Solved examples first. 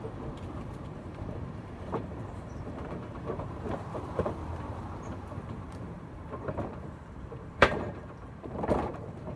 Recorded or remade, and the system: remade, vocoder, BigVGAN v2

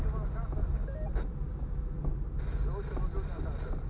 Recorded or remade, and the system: recorded